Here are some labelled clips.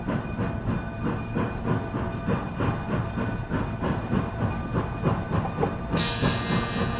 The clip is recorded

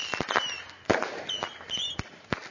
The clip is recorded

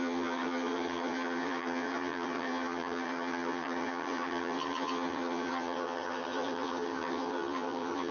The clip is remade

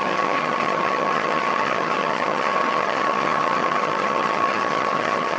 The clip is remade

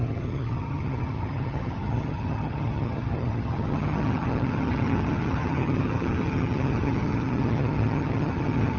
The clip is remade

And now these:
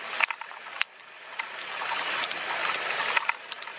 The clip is recorded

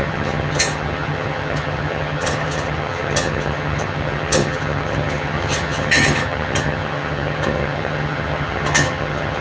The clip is remade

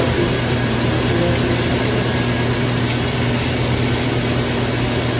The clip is recorded